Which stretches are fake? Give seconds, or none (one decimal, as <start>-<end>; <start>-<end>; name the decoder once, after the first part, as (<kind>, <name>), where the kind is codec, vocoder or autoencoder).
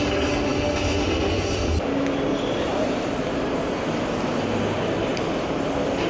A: none